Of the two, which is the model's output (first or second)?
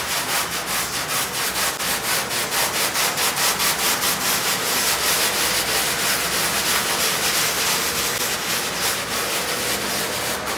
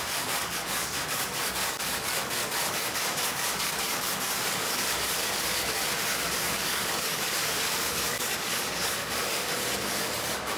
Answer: second